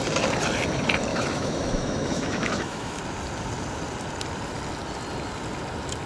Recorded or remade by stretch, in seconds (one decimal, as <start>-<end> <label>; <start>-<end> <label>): 0.0-1.1 recorded; 1.1-3.0 remade; 3.0-6.1 recorded